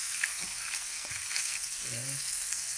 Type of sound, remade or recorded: remade